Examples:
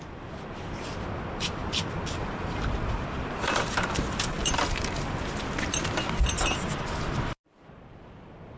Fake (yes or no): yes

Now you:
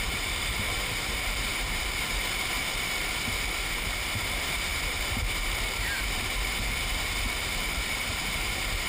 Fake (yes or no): yes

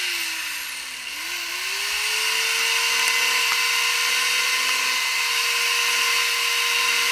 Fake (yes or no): no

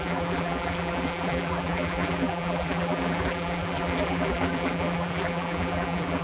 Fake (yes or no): yes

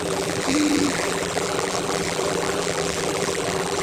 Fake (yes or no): yes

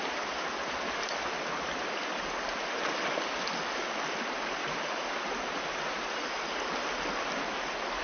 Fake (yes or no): no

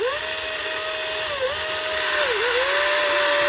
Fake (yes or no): no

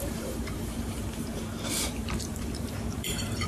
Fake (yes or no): yes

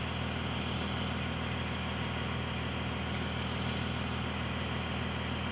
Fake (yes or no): no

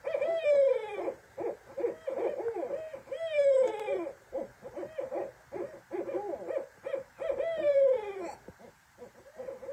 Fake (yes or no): yes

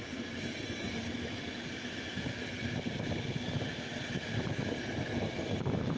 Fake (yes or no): no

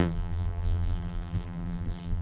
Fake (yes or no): yes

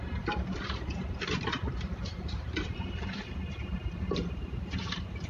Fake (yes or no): yes